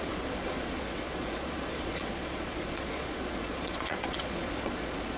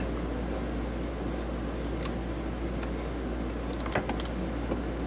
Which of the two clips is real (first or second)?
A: second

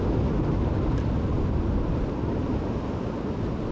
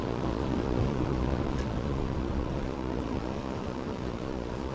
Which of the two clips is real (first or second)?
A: first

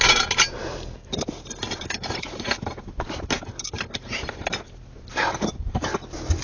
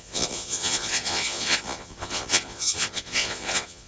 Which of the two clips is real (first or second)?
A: first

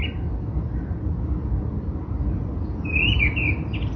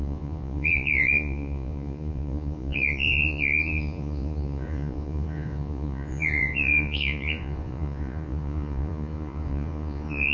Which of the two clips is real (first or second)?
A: first